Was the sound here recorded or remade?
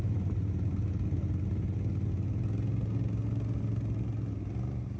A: recorded